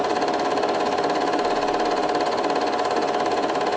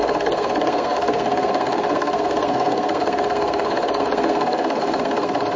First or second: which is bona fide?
first